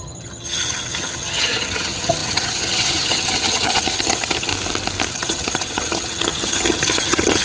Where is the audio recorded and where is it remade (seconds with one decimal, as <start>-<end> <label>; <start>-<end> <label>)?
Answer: 0.0-4.5 remade; 4.5-5.1 recorded; 5.1-7.4 remade